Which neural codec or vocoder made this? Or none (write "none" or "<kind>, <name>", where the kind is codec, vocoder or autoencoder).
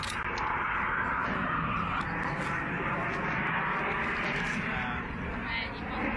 none